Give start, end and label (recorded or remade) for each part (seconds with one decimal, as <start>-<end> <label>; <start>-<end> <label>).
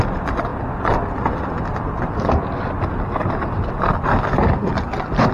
0.0-5.3 recorded